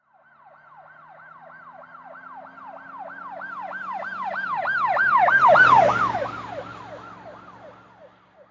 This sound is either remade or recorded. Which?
recorded